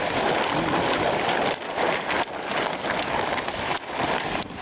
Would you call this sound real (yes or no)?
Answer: yes